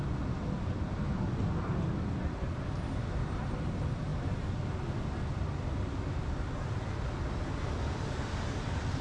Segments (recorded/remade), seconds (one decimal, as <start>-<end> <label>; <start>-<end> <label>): 0.0-9.0 recorded

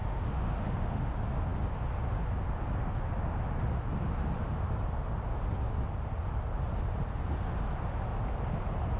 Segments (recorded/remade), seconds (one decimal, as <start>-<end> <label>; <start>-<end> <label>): 0.0-1.1 remade; 1.1-9.0 recorded